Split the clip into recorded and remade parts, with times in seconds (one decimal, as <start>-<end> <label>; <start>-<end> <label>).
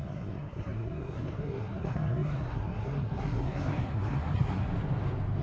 0.0-4.7 remade; 4.7-5.4 recorded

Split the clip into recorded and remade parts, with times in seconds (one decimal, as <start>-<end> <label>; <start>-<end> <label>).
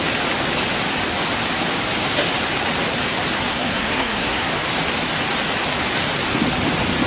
0.0-3.5 recorded; 3.5-4.5 remade; 4.5-7.1 recorded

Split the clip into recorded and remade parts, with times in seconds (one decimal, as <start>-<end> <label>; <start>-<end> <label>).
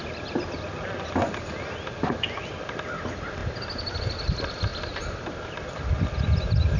0.0-6.8 recorded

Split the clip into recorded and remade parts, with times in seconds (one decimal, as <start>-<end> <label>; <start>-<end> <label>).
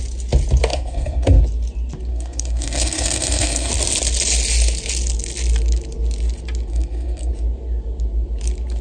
0.0-0.7 recorded; 0.7-1.4 remade; 1.4-2.1 recorded; 2.1-3.7 remade; 3.7-6.7 recorded; 6.7-7.3 remade; 7.3-8.8 recorded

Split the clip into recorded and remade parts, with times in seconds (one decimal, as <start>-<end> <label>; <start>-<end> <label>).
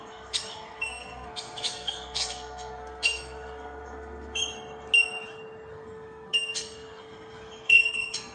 0.0-4.4 remade; 4.4-5.7 recorded; 5.7-8.3 remade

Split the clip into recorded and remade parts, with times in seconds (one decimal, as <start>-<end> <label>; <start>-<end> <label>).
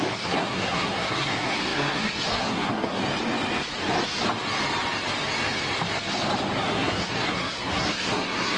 0.0-3.0 remade; 3.0-6.6 recorded; 6.6-8.6 remade